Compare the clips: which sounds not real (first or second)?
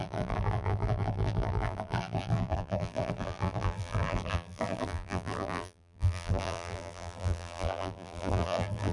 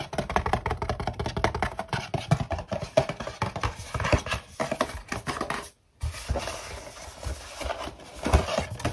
first